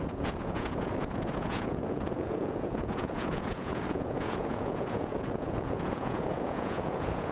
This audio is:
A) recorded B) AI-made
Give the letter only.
B